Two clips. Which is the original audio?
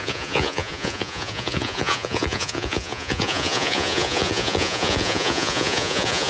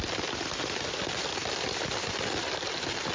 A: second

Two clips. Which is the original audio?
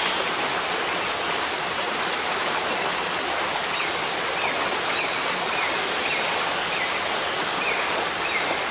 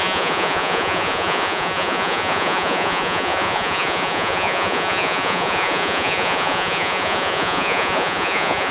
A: first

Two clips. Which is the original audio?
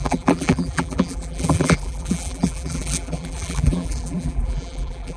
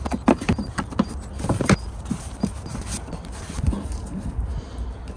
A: second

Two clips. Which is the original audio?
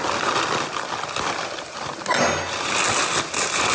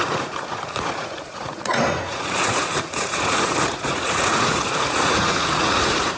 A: first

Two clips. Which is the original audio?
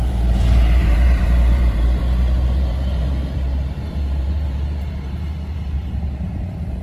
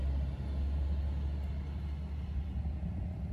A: second